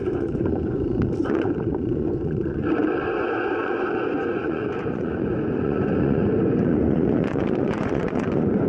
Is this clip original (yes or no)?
no